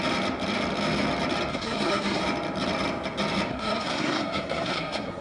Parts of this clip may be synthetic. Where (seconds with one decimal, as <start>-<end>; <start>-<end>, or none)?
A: 1.5-2.2; 3.5-5.2